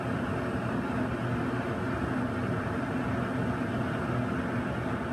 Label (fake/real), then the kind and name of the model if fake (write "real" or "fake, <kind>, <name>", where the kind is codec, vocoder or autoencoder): real